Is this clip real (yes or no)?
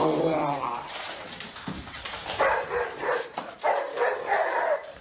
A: no